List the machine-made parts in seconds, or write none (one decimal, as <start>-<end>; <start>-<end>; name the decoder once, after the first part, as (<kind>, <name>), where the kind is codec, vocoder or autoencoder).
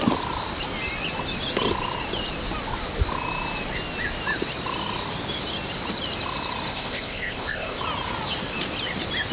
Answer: 6.7-7.8 (codec, ZipCodec)